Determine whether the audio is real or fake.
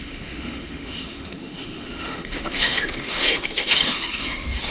fake